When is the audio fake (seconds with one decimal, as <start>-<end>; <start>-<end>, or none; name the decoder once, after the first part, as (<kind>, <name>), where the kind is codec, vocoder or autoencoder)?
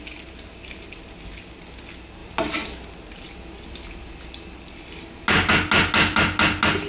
none